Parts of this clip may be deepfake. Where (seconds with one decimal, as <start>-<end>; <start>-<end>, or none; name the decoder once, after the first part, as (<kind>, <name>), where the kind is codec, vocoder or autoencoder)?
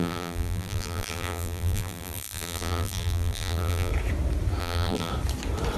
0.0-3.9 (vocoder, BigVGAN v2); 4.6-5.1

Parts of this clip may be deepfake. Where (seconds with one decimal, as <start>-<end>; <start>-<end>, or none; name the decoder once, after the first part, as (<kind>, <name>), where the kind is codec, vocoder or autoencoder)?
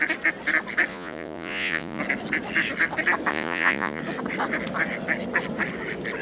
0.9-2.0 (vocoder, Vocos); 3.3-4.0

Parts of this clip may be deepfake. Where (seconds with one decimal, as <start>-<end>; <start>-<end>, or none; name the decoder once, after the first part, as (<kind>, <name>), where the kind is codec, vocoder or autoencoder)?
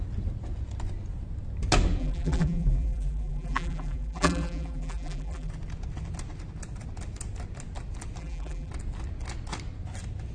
2.0-5.5 (vocoder, BigVGAN v2); 8.2-8.7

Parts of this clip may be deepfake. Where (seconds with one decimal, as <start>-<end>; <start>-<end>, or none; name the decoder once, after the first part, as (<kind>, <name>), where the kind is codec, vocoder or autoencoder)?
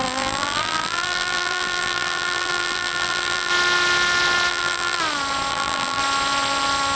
0.0-3.5 (vocoder, BigVGAN v2); 4.5-5.0; 5.5-6.0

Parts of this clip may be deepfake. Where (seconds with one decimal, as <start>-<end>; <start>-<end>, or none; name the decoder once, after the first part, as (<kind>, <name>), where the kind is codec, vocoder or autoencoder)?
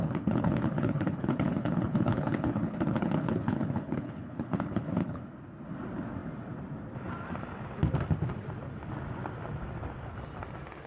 0.0-5.2 (codec, HILCodec)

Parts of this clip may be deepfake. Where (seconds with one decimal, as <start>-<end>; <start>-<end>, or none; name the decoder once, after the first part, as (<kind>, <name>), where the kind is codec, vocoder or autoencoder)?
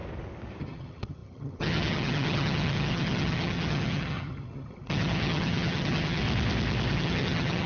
0.6-6.2 (vocoder, HiFi-GAN); 6.9-7.7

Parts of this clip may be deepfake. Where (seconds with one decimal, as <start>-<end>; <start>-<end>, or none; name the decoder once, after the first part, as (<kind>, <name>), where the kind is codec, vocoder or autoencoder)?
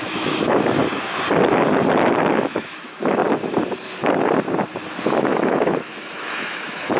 0.0-0.8 (autoencoder, DAC-VAE); 2.3-3.2; 5.1-7.0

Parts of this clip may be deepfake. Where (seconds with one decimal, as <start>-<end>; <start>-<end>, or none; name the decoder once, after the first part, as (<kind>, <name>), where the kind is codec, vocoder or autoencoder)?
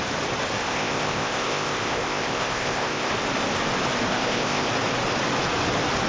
0.6-3.1 (codec, ZipCodec); 4.1-4.7